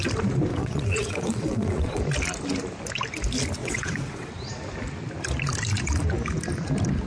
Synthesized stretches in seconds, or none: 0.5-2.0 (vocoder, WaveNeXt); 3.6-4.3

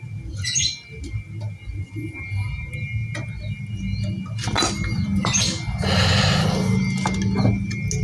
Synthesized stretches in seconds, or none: none

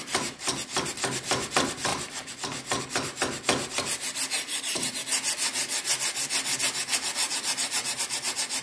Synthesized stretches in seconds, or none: 7.2-8.0 (vocoder, BigVGAN v2)

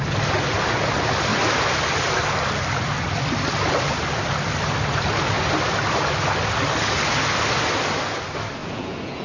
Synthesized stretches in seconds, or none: 8.6-9.2 (vocoder, Vocos)

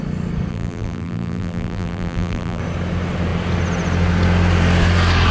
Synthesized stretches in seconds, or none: 0.5-2.6 (vocoder, BigVGAN v2)